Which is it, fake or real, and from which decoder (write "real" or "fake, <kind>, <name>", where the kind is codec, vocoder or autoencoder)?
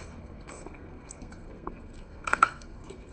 fake, codec, SNAC